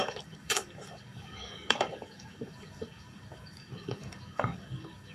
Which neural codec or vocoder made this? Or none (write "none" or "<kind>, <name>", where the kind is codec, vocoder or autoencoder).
codec, DAC